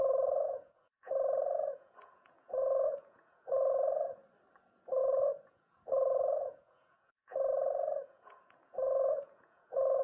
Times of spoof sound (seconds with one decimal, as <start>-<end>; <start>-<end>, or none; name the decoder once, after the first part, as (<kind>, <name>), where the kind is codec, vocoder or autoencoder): 0.0-4.2 (vocoder, Vocos); 5.0-10.0